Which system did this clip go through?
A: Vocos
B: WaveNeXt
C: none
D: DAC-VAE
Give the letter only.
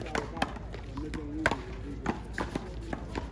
C